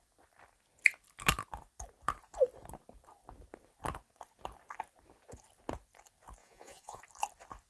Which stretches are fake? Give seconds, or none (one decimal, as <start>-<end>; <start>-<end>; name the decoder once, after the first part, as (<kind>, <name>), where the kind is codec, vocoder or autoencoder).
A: 6.4-7.0 (vocoder, Vocos)